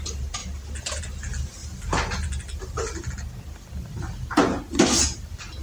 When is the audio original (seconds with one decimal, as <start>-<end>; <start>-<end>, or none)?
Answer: 0.0-5.6